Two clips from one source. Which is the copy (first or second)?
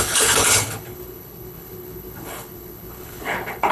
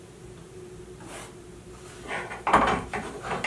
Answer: first